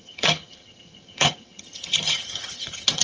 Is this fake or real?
fake